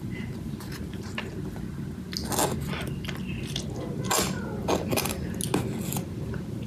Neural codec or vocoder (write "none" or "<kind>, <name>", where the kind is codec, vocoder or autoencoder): none